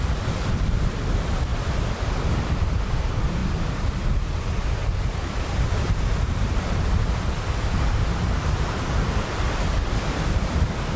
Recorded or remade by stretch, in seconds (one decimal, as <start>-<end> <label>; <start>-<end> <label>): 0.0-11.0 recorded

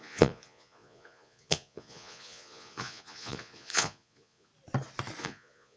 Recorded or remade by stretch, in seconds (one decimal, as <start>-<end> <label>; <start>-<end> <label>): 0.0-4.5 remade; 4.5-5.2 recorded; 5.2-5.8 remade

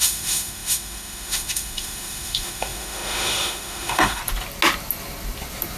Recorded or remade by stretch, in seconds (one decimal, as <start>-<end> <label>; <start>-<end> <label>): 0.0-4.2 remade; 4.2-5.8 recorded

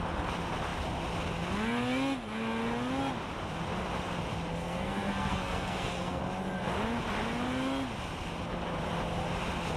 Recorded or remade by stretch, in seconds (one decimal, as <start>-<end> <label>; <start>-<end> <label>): 0.0-4.6 recorded; 4.6-6.2 remade; 6.2-9.8 recorded